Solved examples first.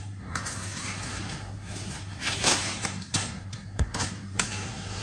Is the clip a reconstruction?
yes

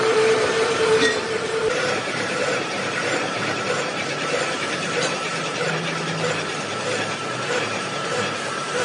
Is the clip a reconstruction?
yes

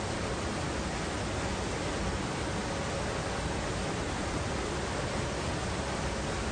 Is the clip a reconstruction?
no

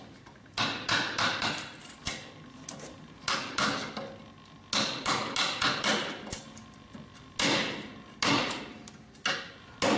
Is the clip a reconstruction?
no